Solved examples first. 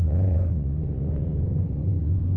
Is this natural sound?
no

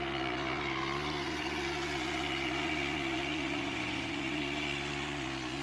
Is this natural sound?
no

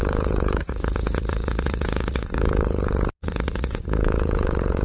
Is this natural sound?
no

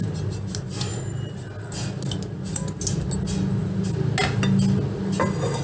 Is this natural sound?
yes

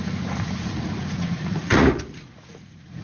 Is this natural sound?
no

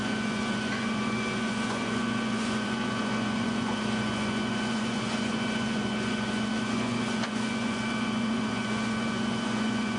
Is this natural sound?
no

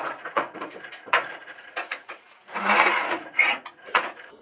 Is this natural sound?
no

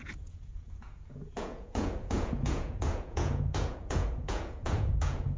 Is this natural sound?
no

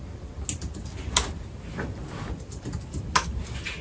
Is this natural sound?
yes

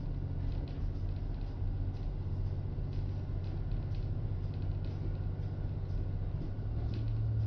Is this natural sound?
yes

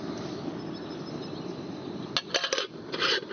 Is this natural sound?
yes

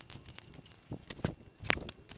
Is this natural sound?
yes